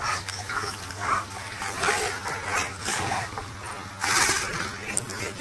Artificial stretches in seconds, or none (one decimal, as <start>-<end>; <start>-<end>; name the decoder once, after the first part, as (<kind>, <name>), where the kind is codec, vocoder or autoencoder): 0.0-1.6 (codec, DAC); 2.7-3.5